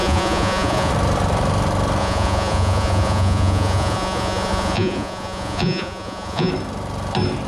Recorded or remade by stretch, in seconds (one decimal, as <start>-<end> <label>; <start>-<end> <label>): 0.0-0.9 remade; 0.9-2.0 recorded; 2.0-6.5 remade; 6.5-7.5 recorded